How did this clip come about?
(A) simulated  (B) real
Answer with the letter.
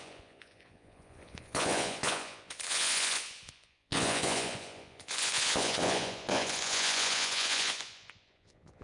A